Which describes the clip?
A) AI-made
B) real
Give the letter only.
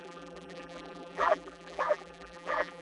A